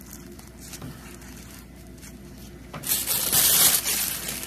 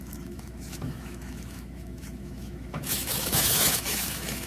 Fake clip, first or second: second